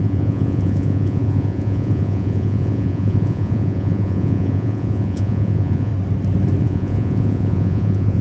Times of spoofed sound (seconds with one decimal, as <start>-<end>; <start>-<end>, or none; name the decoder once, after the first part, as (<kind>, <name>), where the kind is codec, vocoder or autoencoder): 0.0-5.9 (vocoder, Vocos); 6.6-8.2